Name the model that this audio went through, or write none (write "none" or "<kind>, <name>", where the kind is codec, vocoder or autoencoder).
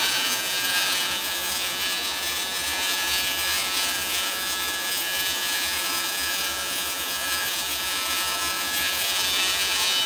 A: vocoder, Vocos